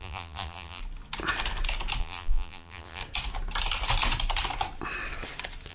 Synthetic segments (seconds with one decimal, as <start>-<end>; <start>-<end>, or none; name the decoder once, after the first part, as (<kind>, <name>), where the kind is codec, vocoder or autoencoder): 0.0-0.8 (vocoder, BigVGAN v2); 2.0-3.0